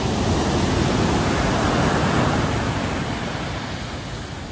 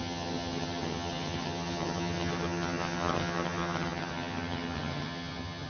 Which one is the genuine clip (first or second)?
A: first